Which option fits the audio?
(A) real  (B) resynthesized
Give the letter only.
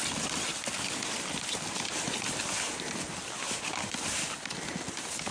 A